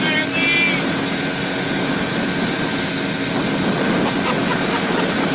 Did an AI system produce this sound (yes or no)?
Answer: no